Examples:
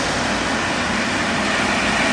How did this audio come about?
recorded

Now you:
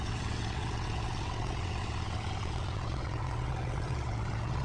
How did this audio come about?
remade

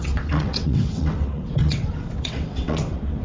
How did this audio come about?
remade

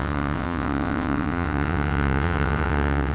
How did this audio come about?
remade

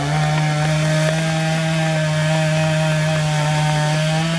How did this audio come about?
recorded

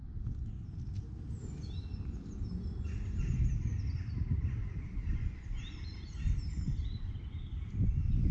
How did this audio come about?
recorded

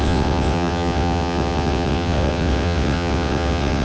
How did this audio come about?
remade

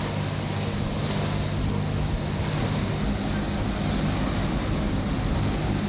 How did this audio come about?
recorded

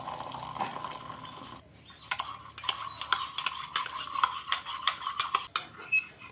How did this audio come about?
recorded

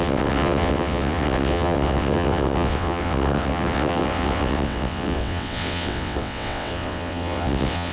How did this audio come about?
remade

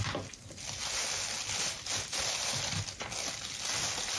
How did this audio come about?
recorded